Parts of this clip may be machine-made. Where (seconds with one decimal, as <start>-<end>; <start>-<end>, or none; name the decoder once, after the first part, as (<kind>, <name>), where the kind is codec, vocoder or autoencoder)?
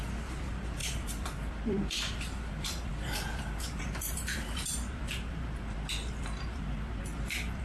0.0-5.6 (vocoder, BigVGAN v2); 6.4-7.6